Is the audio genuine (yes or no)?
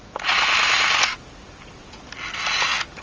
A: yes